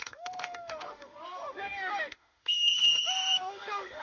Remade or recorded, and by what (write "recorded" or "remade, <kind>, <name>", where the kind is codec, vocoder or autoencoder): remade, autoencoder, DAC-VAE